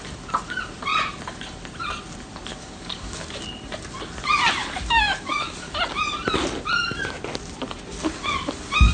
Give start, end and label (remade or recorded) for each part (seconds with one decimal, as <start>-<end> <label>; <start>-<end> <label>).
0.0-2.5 recorded; 2.5-3.4 remade; 3.4-4.6 recorded; 4.6-5.7 remade; 5.7-8.9 recorded